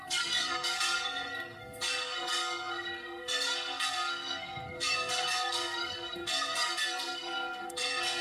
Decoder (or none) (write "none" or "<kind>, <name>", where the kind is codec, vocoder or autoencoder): codec, SNAC